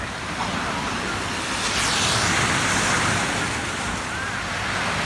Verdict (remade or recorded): recorded